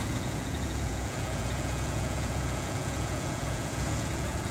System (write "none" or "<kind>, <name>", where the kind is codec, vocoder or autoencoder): vocoder, Vocos